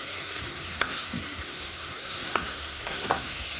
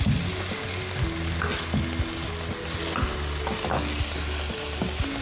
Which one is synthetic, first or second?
first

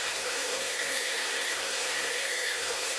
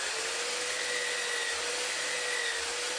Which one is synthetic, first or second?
first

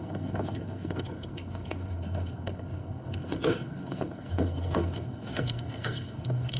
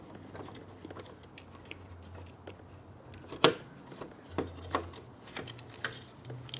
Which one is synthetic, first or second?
first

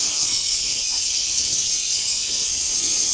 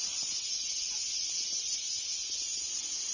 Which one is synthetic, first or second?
first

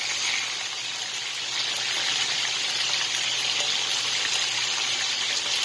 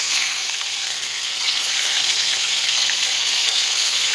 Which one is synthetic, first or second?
second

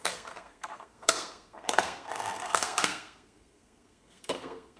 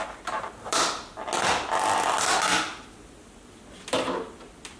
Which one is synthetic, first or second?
first